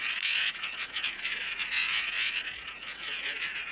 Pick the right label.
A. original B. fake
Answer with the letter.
B